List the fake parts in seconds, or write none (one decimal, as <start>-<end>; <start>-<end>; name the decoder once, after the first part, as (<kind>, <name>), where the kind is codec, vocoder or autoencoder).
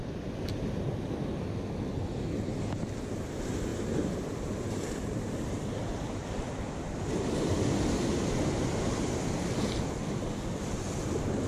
3.7-5.6 (vocoder, BigVGAN v2)